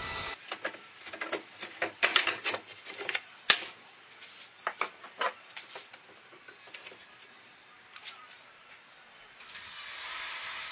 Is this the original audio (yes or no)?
no